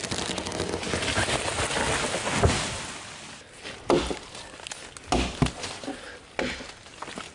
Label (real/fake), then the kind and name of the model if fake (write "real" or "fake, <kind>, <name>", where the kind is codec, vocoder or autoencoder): real